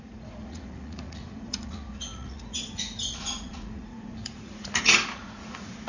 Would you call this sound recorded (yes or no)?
no